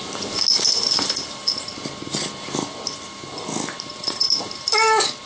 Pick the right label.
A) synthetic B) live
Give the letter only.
B